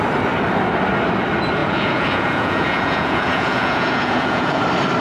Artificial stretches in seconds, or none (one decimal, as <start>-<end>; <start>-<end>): 1.6-4.6

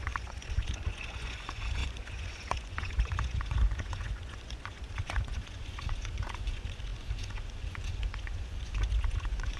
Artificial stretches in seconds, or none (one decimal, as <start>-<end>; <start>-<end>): 0.0-9.6

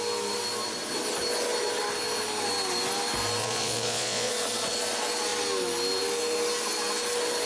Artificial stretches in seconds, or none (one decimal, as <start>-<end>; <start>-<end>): 3.4-4.3

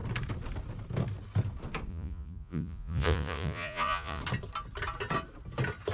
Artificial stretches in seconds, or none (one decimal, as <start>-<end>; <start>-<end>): 1.9-4.2

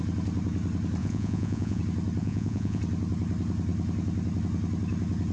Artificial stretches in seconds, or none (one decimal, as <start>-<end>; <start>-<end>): 1.0-1.8; 2.2-2.8

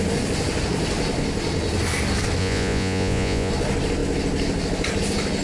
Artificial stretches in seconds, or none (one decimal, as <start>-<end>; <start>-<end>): 2.4-3.5